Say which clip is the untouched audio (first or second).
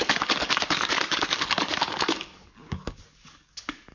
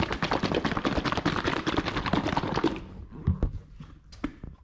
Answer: second